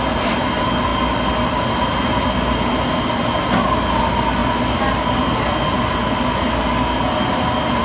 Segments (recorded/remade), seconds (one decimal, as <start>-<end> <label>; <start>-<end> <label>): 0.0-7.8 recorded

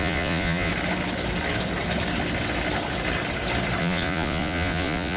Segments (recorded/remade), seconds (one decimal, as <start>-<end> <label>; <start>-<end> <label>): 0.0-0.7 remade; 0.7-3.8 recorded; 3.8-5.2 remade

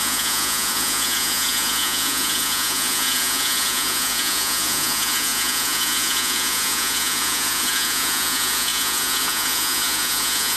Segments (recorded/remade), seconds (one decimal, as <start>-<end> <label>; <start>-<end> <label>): 0.0-10.6 remade

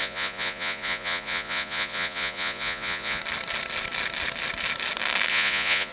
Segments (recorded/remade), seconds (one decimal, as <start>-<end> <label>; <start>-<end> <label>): 0.0-3.2 remade; 3.2-5.3 recorded; 5.3-5.9 remade

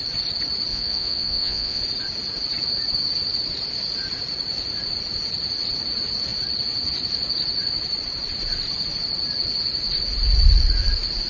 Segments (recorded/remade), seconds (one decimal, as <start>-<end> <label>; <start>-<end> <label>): 0.0-0.7 recorded; 0.7-1.8 remade; 1.8-11.3 recorded

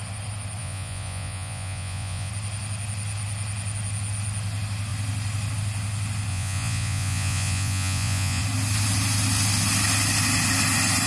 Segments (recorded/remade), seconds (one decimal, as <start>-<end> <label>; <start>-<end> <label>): 0.0-0.6 recorded; 0.6-2.3 remade; 2.3-6.3 recorded; 6.3-8.4 remade; 8.4-11.1 recorded

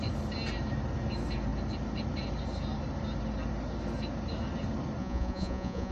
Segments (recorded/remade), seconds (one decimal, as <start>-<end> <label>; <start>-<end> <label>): 0.0-5.0 recorded; 5.0-5.9 remade

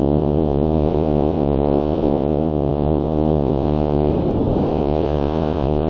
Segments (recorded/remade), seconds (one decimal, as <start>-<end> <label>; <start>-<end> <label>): 0.0-4.1 remade; 4.1-4.7 recorded; 4.7-5.9 remade